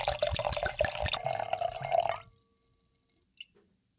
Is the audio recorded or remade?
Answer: recorded